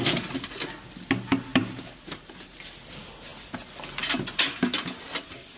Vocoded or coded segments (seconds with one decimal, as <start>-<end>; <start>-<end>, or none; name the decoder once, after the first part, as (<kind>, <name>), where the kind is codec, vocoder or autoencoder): 1.5-2.6 (vocoder, BigVGAN v2)